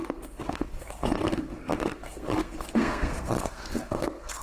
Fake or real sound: fake